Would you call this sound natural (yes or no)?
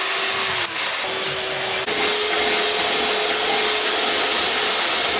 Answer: yes